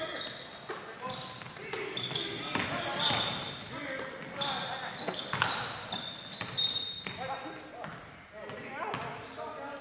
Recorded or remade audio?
recorded